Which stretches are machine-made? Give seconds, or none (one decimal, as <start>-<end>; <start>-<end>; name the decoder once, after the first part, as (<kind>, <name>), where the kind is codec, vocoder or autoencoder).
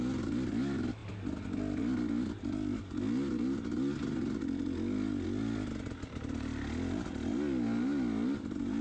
none